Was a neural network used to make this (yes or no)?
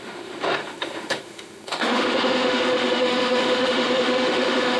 yes